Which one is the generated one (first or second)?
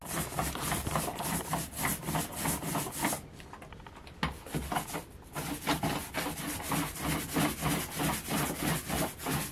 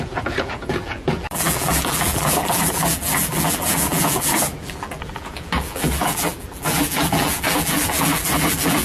second